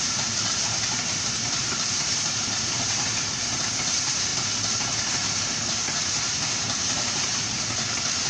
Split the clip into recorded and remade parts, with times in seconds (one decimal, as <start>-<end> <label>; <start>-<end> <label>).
0.0-4.3 remade; 4.3-4.8 recorded; 4.8-8.3 remade